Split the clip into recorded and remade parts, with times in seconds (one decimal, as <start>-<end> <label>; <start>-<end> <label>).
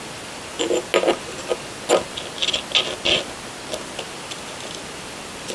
0.0-5.5 recorded